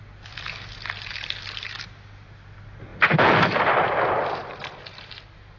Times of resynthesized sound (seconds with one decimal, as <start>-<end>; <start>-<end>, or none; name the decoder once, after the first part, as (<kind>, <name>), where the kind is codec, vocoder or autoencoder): none